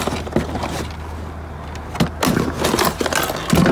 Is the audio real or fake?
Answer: real